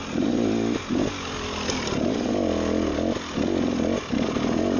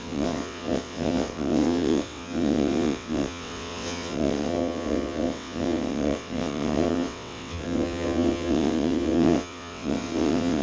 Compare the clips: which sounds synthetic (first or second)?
second